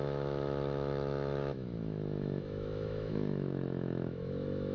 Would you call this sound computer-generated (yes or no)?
yes